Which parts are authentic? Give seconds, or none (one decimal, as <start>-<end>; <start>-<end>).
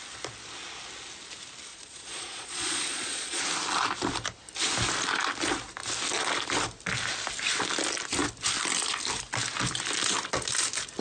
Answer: 0.0-1.7; 3.4-11.0